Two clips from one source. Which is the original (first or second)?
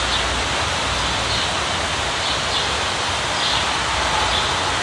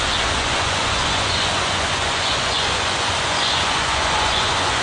first